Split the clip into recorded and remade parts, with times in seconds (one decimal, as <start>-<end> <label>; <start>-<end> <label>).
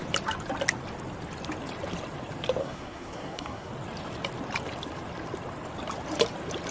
0.0-2.6 recorded; 2.6-3.7 remade; 3.7-6.7 recorded